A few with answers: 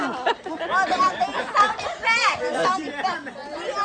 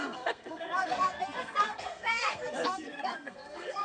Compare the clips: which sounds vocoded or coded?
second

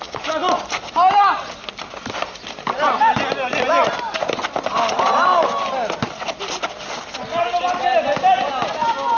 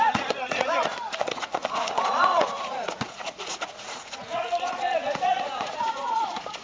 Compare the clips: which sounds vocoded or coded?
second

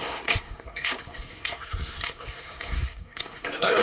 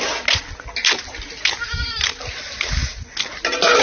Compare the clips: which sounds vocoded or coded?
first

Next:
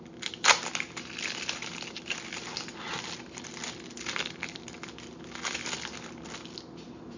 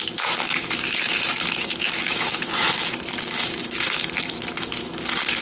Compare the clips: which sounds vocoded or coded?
second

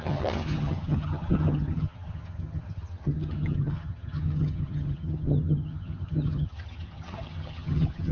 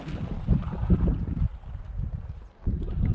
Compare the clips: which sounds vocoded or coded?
first